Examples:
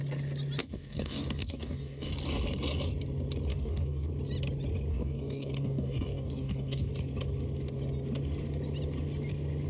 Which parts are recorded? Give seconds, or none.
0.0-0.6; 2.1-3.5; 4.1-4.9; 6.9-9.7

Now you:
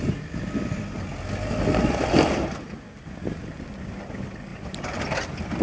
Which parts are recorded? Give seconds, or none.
0.0-5.6

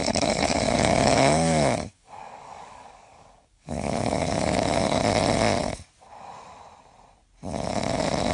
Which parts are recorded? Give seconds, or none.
5.0-8.3

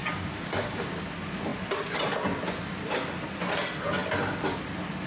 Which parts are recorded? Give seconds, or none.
0.9-5.1

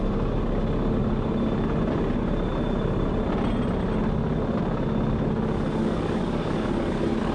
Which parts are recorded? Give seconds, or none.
0.0-5.8

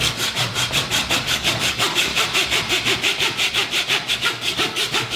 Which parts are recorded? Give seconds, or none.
0.5-1.2; 2.1-4.1